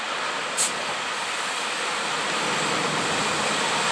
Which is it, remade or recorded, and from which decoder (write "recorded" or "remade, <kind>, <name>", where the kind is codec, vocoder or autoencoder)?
recorded